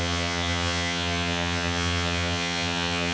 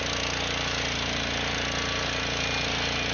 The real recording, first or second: second